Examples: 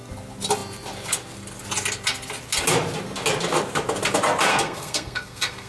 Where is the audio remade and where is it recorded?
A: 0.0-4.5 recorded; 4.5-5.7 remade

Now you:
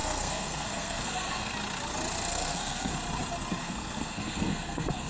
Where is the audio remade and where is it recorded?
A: 0.0-1.5 remade; 1.5-2.3 recorded; 2.3-2.9 remade; 2.9-3.6 recorded; 3.6-5.1 remade